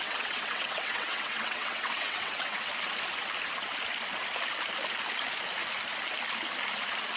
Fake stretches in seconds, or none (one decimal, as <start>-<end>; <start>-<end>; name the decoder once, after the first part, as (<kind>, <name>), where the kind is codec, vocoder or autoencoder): 0.0-2.7 (vocoder, WaveNeXt)